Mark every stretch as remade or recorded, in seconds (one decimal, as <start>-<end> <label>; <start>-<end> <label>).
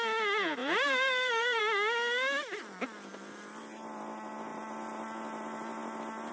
0.0-0.6 recorded; 0.6-1.6 remade; 1.6-6.3 recorded